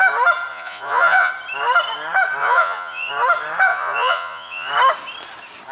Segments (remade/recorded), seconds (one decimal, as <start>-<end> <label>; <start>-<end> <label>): 0.0-0.5 recorded; 0.5-1.3 remade; 1.3-2.4 recorded; 2.4-3.1 remade; 3.1-3.7 recorded; 3.7-4.7 remade; 4.7-5.7 recorded